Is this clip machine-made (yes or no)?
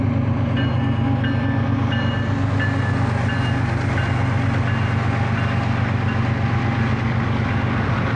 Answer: no